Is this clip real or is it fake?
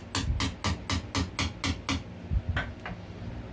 real